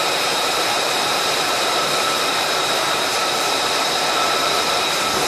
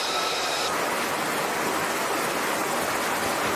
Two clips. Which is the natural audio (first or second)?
second